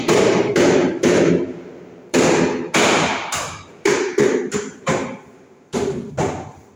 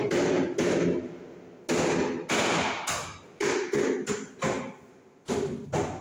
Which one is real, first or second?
second